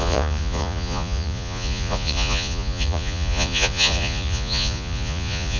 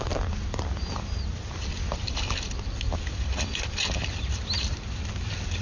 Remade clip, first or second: first